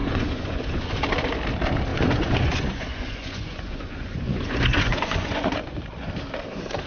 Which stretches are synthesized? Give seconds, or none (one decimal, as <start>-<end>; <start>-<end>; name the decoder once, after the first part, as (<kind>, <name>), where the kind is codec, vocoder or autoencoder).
0.0-1.0 (vocoder, Vocos); 1.9-5.8